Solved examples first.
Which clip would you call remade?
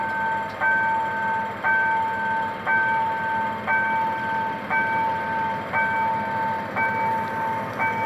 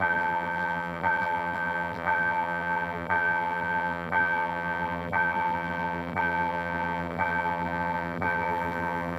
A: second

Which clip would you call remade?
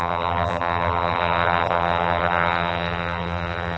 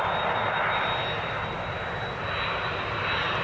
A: first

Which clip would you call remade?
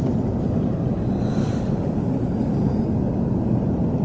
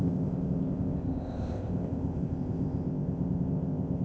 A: second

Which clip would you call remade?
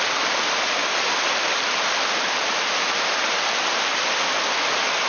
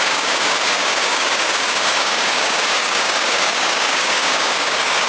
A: second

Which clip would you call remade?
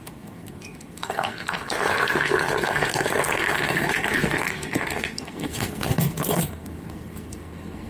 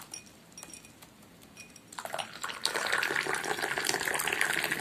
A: first